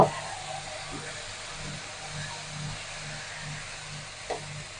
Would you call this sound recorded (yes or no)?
yes